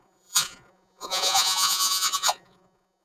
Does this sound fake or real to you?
fake